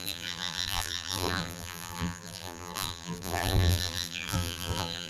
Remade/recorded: remade